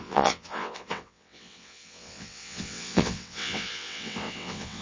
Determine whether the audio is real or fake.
fake